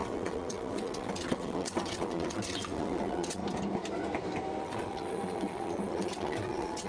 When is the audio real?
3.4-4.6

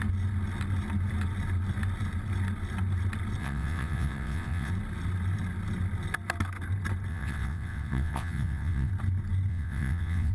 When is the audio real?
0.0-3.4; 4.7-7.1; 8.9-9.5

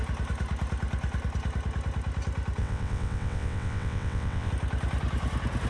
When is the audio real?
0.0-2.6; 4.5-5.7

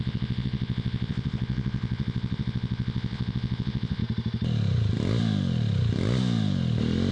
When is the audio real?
4.0-7.1